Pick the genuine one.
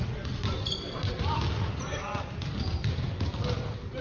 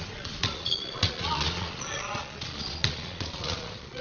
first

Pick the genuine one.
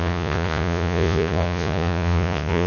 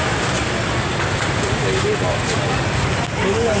second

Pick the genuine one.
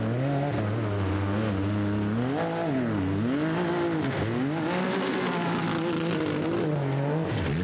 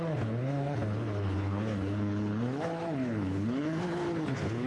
first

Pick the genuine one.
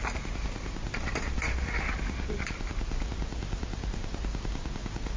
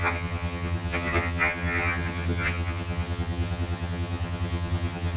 first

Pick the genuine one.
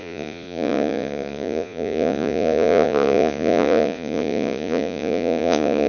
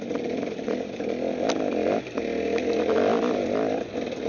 second